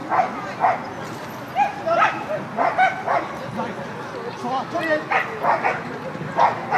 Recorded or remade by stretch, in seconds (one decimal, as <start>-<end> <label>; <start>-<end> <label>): 0.0-6.8 recorded